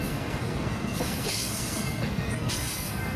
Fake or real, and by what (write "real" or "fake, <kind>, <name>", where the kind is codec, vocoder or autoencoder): fake, codec, SNAC